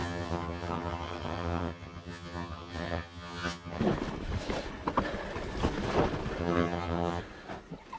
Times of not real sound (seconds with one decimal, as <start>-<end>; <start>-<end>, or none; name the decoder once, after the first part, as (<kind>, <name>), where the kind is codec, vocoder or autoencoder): 0.0-3.8 (vocoder, HiFi-GAN); 6.4-7.2